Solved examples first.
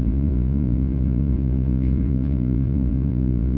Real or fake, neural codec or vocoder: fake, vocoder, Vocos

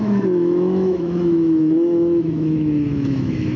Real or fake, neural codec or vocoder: fake, autoencoder, DAC-VAE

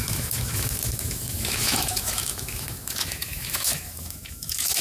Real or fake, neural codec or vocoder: fake, autoencoder, DAC-VAE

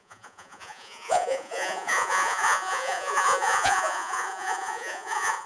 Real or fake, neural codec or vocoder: fake, vocoder, Vocos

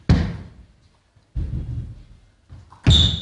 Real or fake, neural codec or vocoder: real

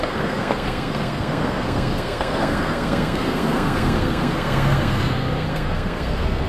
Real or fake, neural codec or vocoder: fake, codec, SNAC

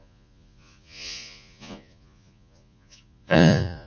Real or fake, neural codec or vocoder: fake, vocoder, Vocos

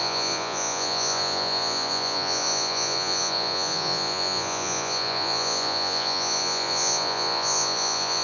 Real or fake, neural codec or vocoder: fake, vocoder, Vocos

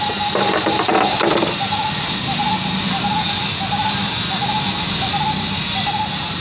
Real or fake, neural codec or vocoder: real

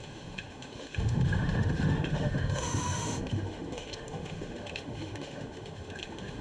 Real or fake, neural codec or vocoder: fake, autoencoder, DAC-VAE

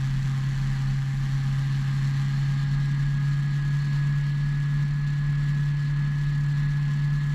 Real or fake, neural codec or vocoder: real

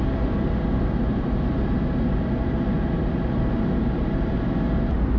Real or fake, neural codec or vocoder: real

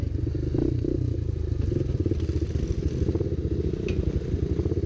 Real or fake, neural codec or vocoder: real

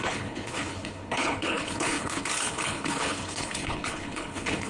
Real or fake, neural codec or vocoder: fake, codec, HILCodec